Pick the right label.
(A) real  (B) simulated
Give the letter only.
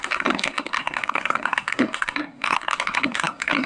B